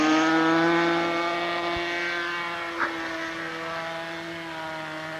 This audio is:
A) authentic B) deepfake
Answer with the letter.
A